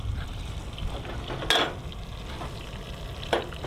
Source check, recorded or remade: recorded